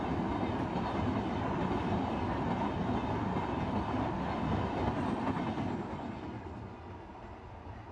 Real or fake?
real